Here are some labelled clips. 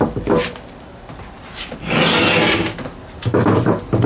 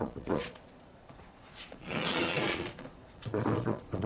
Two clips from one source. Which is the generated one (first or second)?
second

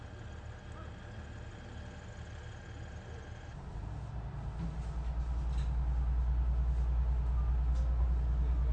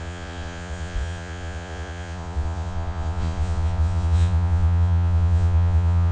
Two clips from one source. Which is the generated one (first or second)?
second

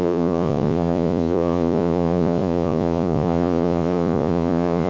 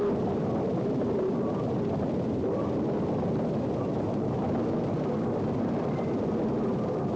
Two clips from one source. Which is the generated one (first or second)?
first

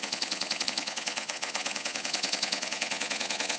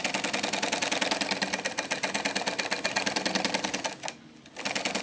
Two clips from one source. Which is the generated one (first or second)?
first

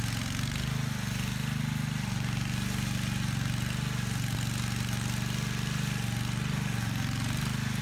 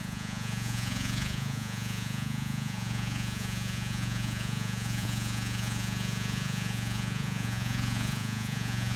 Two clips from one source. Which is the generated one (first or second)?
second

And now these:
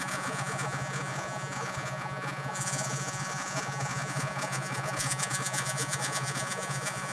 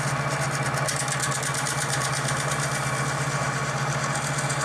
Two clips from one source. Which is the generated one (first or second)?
first